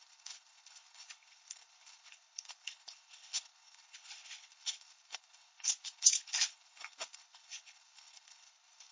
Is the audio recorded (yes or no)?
no